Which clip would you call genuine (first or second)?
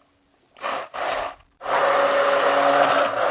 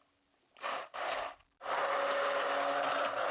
first